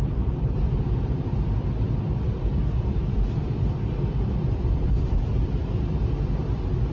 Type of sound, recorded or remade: remade